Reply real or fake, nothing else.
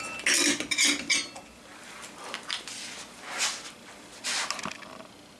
real